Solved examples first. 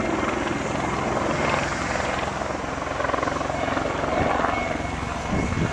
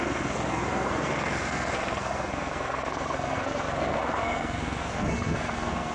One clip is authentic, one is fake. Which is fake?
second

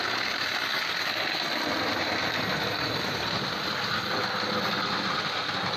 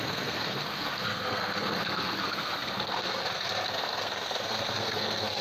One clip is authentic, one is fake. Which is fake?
second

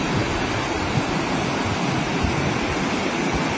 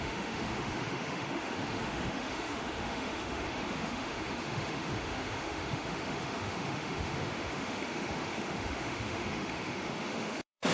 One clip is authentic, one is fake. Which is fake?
second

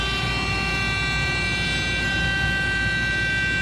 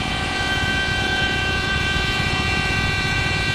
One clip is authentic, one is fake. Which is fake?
second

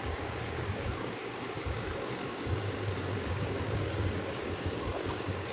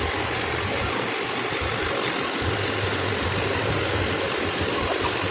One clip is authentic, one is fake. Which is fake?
first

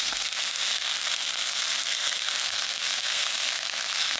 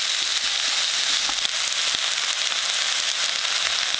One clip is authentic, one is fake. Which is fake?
first